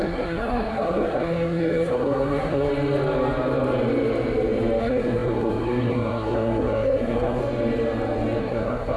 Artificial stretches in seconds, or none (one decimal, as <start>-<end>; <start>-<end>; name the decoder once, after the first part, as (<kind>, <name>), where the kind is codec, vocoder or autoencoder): 0.0-2.7 (codec, SNAC); 4.8-7.4; 8.4-9.0